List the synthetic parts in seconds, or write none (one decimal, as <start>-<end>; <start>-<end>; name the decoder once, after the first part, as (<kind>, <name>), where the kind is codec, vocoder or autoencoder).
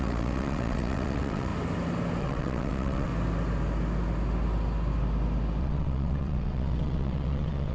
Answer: 0.0-1.5 (vocoder, WaveNeXt); 2.2-3.1; 5.6-7.7